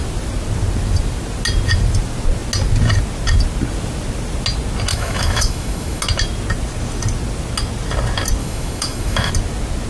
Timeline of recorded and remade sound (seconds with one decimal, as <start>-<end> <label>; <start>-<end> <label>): 0.0-4.9 recorded; 4.9-6.0 remade; 6.0-8.4 recorded; 8.4-9.3 remade; 9.3-9.9 recorded